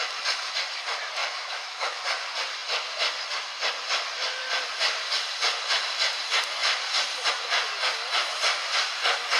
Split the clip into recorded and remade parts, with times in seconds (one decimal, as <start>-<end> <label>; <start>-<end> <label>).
0.0-1.2 recorded; 1.2-2.0 remade; 2.0-9.4 recorded